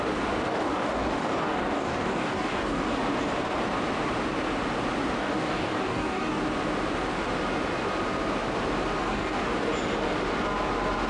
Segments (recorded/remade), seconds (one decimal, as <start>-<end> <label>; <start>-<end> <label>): 0.0-0.5 recorded; 0.5-2.9 remade; 2.9-5.2 recorded; 5.2-6.4 remade; 6.4-9.0 recorded; 9.0-9.7 remade; 9.7-11.1 recorded